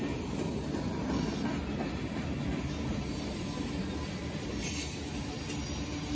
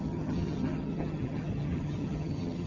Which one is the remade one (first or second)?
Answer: second